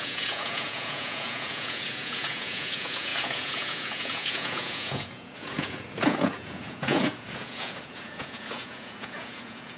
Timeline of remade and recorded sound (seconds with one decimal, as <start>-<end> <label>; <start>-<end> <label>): 0.0-9.8 remade